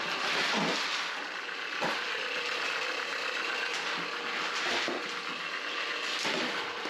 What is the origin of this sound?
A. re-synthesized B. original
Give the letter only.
B